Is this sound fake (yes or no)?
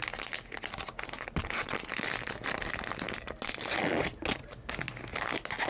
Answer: no